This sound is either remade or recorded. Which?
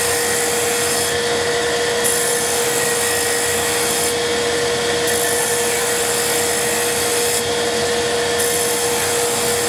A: recorded